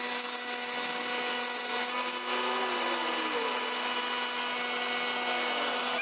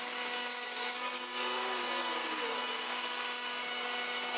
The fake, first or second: second